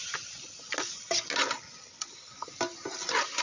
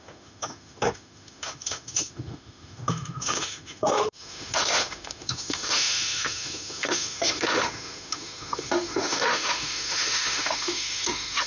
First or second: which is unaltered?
first